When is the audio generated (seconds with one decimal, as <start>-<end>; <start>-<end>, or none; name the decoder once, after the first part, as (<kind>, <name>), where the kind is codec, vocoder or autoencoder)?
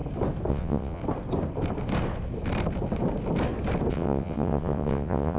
0.5-1.0 (vocoder, WaveNeXt); 3.9-5.4